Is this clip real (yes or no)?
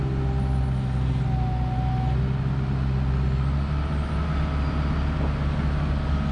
yes